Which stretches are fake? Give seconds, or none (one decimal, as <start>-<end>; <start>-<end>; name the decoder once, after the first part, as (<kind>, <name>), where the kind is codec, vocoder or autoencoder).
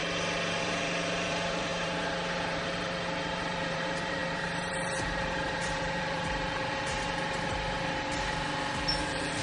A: 0.6-9.4 (vocoder, BigVGAN v2)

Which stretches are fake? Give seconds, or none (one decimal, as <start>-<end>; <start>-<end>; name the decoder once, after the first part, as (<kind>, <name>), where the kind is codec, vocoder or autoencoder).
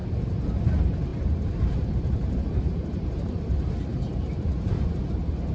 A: 1.1-3.3 (vocoder, BigVGAN v2); 3.9-5.0